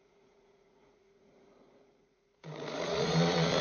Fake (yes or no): yes